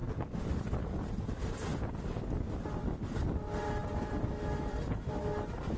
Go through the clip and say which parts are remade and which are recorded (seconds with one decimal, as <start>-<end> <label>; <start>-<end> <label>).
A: 0.0-1.1 remade; 1.1-3.8 recorded; 3.8-5.1 remade; 5.1-5.8 recorded